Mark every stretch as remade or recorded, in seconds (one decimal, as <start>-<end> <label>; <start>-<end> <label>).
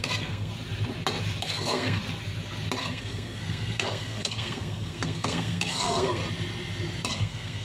0.0-0.5 remade; 0.5-1.4 recorded; 1.4-2.0 remade; 2.0-2.8 recorded; 2.8-6.2 remade; 6.2-7.1 recorded; 7.1-7.6 remade